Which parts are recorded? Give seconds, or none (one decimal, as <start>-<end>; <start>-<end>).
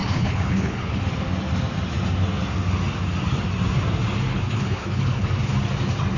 1.0-4.3; 5.3-6.2